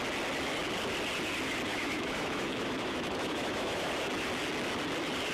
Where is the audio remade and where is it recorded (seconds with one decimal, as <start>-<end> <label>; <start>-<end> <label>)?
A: 0.0-1.7 recorded; 1.7-3.9 remade; 3.9-5.3 recorded